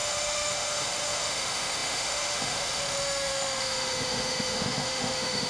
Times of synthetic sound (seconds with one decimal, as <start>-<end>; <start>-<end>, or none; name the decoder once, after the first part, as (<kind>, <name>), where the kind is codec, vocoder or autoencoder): 0.0-5.5 (autoencoder, DAC-VAE)

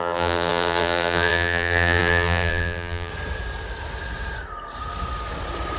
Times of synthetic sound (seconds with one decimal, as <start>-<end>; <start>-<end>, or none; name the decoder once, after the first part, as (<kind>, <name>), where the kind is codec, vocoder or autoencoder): 0.0-3.1 (vocoder, BigVGAN v2)

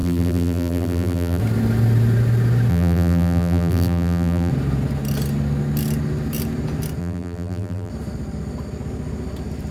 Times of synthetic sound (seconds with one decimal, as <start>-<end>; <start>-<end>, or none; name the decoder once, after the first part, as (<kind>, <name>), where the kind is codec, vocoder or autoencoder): 0.0-1.4 (vocoder, BigVGAN v2); 2.7-4.5; 7.0-7.9

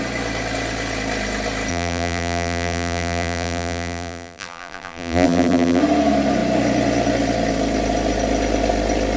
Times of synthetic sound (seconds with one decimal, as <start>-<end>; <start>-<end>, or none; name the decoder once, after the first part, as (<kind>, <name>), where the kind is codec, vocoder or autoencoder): 1.7-5.8 (vocoder, BigVGAN v2)